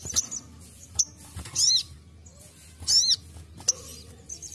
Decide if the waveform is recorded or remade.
recorded